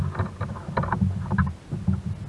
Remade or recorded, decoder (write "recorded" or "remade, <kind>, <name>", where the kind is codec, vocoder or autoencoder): recorded